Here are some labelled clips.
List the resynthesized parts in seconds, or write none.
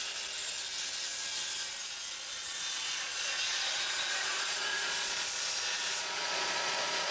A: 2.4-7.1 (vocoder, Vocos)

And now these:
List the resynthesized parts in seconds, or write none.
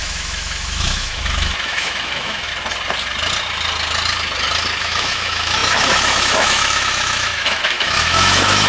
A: 0.0-2.5 (autoencoder, DAC-VAE); 4.8-8.7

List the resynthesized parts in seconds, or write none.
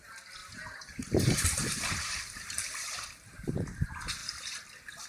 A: 0.0-4.2 (vocoder, BigVGAN v2)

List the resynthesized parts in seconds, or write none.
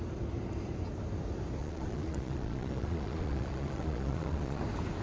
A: 1.6-4.6 (vocoder, Vocos)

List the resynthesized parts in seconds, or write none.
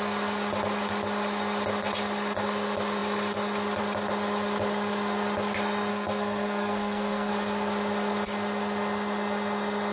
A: 5.9-7.3 (codec, SNAC)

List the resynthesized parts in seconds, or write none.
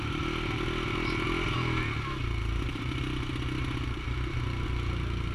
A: 2.2-3.0 (vocoder, BigVGAN v2)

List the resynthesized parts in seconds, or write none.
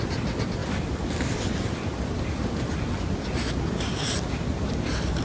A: none